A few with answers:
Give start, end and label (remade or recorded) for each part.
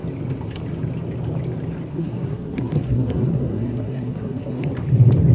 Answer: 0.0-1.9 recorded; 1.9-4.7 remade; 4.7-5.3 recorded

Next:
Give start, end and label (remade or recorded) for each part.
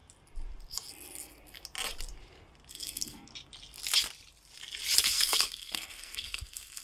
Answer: 0.0-2.7 recorded; 2.7-3.3 remade; 3.3-5.0 recorded; 5.0-6.8 remade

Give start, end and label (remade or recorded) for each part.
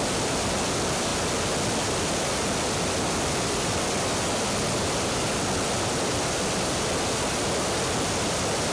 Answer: 0.0-8.7 recorded